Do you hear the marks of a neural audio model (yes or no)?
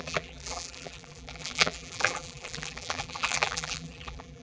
yes